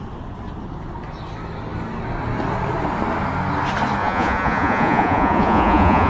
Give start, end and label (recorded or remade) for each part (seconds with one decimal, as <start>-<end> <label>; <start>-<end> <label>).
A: 0.0-4.0 recorded; 4.0-6.1 remade